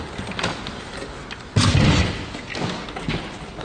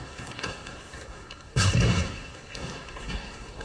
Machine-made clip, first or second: second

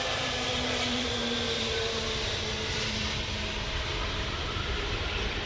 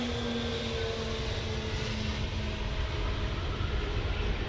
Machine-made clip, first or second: first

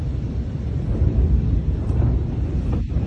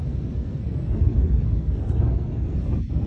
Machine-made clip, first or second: second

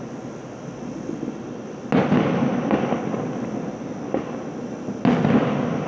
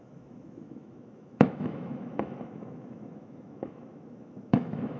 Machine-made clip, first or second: second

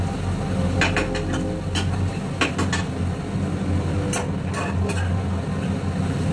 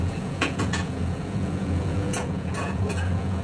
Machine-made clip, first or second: second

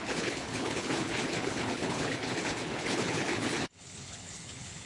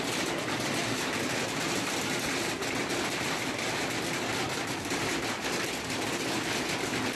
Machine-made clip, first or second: first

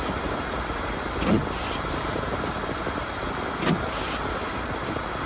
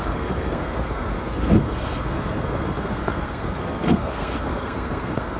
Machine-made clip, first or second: second